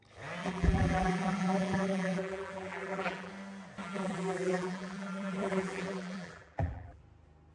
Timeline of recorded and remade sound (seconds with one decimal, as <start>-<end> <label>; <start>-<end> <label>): 0.0-0.4 recorded; 0.4-3.3 remade; 3.3-3.8 recorded; 3.8-7.0 remade; 7.0-7.5 recorded